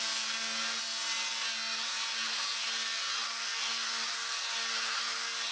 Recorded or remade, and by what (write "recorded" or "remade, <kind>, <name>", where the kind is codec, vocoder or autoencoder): recorded